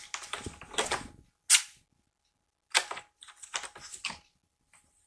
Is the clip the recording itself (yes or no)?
yes